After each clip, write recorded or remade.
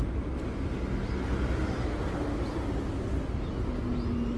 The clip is recorded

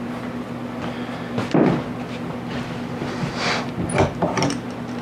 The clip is recorded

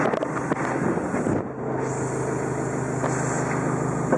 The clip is recorded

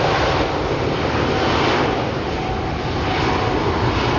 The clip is recorded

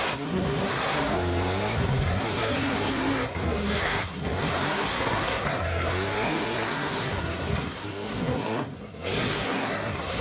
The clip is remade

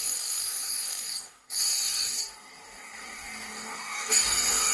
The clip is remade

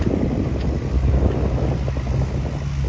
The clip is recorded